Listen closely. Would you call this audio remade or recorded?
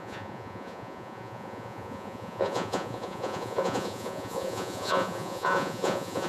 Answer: remade